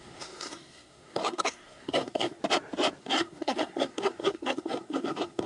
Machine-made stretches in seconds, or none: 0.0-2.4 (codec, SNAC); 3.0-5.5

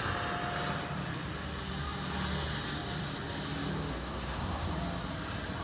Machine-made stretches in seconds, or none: 3.9-4.7 (codec, SNAC)

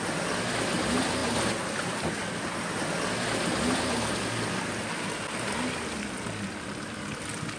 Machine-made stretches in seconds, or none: none

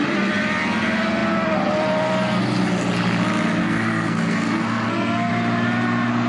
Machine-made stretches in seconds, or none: 3.6-5.3 (codec, SNAC)

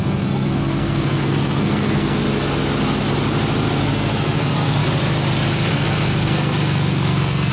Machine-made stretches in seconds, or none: 0.0-2.2 (codec, SNAC); 3.8-4.8; 5.7-7.5